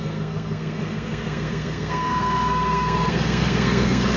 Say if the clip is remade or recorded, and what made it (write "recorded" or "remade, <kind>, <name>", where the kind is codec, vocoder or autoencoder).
remade, codec, SNAC